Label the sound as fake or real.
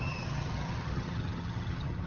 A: fake